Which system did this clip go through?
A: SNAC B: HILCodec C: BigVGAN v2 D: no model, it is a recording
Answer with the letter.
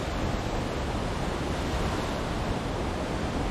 D